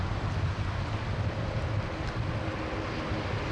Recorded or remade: recorded